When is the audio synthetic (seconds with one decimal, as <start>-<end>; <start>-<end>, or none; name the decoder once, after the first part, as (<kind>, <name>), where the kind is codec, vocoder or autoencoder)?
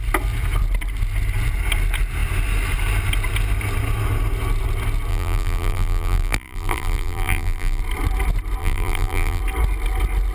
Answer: 5.1-7.8 (vocoder, BigVGAN v2); 8.6-9.4